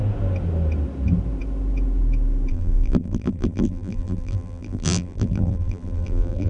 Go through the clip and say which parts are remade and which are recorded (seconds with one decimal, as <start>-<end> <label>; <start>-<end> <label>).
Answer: 0.0-2.5 recorded; 2.5-6.5 remade